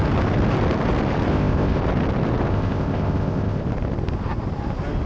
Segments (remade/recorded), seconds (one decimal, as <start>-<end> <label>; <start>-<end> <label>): 0.0-1.3 recorded; 1.3-1.8 remade; 1.8-2.5 recorded; 2.5-3.6 remade; 3.6-5.1 recorded